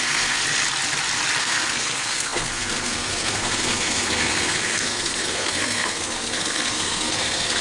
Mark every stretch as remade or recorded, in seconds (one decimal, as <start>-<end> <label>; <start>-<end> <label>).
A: 0.0-0.4 remade; 0.4-1.4 recorded; 1.4-7.6 remade